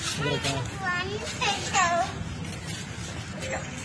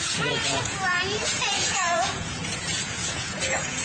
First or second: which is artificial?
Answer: second